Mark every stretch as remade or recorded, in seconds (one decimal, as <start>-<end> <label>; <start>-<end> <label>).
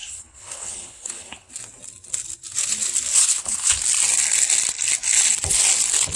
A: 0.0-1.5 remade; 1.5-3.1 recorded; 3.1-3.8 remade; 3.8-6.2 recorded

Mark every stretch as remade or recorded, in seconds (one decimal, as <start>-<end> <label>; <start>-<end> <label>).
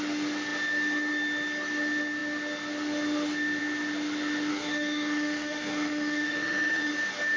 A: 0.0-4.5 recorded; 4.5-6.9 remade; 6.9-7.4 recorded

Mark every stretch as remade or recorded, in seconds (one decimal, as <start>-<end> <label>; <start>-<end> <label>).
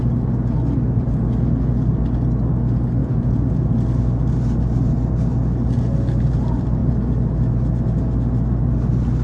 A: 0.0-3.0 recorded; 3.0-3.5 remade; 3.5-9.2 recorded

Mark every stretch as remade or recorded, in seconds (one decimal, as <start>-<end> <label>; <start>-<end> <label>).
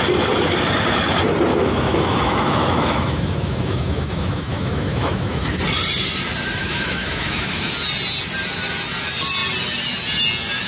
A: 0.0-1.5 recorded; 1.5-5.6 remade; 5.6-6.6 recorded; 6.6-7.7 remade; 7.7-10.7 recorded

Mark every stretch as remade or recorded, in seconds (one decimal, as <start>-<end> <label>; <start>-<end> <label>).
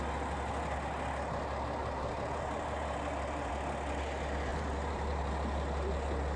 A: 0.0-1.8 recorded; 1.8-3.5 remade; 3.5-4.5 recorded; 4.5-5.3 remade; 5.3-6.4 recorded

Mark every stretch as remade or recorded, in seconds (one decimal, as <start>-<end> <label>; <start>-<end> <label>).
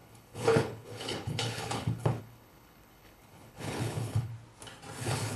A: 0.0-4.3 remade; 4.3-5.0 recorded; 5.0-5.4 remade